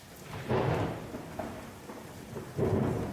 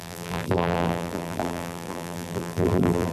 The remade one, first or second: second